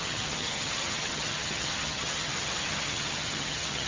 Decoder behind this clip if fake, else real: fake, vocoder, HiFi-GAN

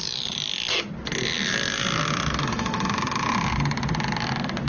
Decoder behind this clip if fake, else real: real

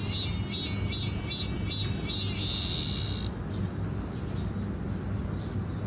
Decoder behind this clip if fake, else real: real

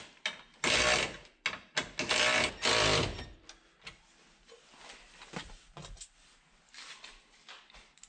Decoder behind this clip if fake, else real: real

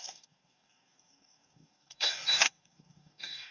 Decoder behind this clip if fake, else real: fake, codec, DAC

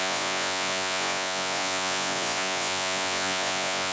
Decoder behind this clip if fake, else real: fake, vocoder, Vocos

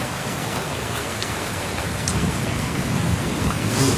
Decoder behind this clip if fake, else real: fake, codec, SNAC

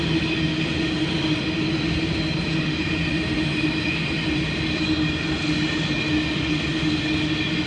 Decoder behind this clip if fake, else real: real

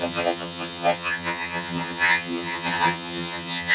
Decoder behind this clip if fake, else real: fake, vocoder, HiFi-GAN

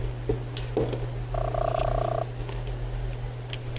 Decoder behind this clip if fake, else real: real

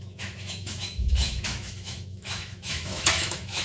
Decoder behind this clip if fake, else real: fake, autoencoder, DAC-VAE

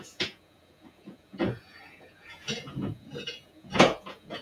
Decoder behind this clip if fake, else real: fake, vocoder, Vocos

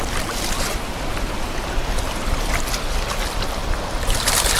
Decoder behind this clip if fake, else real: real